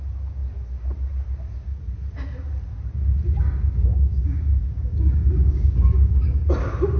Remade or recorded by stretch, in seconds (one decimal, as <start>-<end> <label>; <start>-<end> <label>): 0.0-3.9 recorded; 3.9-6.5 remade; 6.5-7.0 recorded

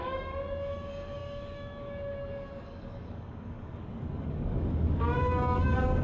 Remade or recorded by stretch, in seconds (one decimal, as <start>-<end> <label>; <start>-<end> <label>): 0.0-6.0 remade

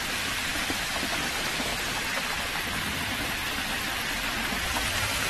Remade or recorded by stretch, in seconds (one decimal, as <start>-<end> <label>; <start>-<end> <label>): 0.0-5.3 recorded

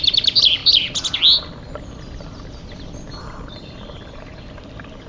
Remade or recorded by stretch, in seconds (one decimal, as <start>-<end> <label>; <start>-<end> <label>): 0.0-5.1 recorded

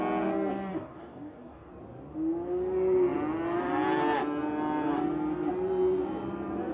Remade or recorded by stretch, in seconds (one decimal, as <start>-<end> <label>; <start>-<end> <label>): 0.0-0.7 recorded; 0.7-1.7 remade; 1.7-6.7 recorded

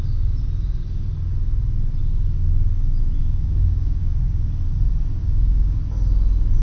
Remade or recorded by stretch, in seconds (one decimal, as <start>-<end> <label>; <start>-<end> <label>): 0.0-3.2 recorded; 3.2-4.1 remade; 4.1-5.2 recorded; 5.2-5.8 remade; 5.8-6.6 recorded

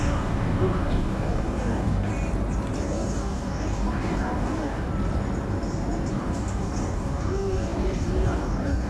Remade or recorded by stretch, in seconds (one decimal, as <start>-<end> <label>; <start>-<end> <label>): 0.0-2.1 remade; 2.1-2.8 recorded; 2.8-4.9 remade; 4.9-6.1 recorded; 6.1-8.9 remade